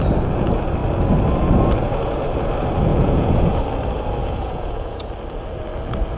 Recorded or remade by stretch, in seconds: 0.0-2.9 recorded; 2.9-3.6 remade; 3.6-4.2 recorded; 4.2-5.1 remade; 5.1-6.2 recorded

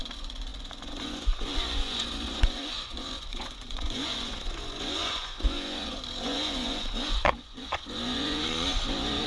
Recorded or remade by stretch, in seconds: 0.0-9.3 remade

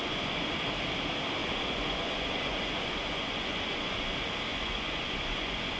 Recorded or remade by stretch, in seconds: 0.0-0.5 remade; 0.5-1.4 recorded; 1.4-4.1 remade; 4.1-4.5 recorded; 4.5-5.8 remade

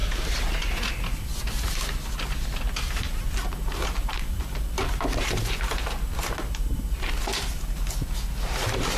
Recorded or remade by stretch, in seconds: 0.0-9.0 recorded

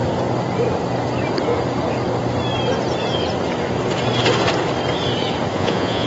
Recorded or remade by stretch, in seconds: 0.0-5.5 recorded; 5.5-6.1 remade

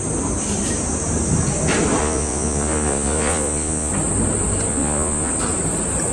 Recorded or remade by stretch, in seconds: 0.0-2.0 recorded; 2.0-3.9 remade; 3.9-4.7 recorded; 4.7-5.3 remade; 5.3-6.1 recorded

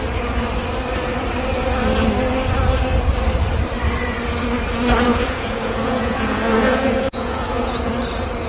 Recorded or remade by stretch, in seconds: 0.0-5.1 recorded; 5.1-7.9 remade; 7.9-8.5 recorded

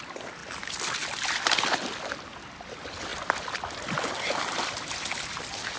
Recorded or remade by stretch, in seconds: 0.0-5.8 recorded